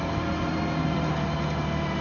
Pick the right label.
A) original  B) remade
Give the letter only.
A